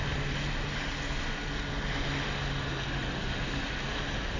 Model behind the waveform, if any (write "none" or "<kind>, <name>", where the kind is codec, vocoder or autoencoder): none